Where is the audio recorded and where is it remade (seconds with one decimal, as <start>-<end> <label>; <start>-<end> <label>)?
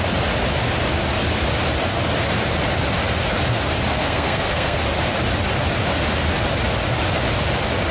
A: 0.0-3.9 recorded; 3.9-4.8 remade; 4.8-7.9 recorded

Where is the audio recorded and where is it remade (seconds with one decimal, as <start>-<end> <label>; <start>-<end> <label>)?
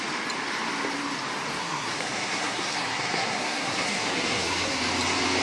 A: 0.0-1.6 recorded; 1.6-4.8 remade; 4.8-5.4 recorded